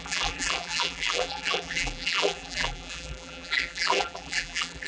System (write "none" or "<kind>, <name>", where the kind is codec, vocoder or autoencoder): vocoder, BigVGAN v2